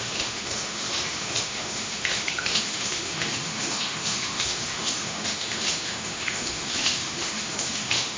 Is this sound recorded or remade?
remade